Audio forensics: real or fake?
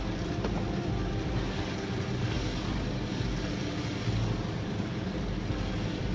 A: fake